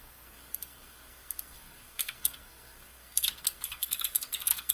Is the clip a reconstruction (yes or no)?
yes